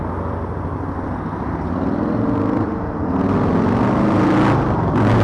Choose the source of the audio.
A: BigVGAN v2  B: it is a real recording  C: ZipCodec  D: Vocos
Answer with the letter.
B